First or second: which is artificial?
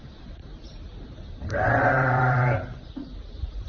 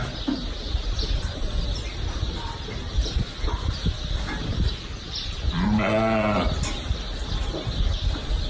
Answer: first